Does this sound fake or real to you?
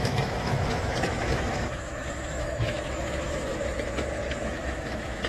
fake